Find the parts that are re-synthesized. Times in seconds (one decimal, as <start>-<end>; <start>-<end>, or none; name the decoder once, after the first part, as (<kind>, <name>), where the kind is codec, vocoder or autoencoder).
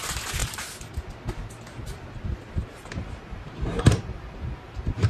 0.4-0.9 (vocoder, BigVGAN v2); 2.6-5.1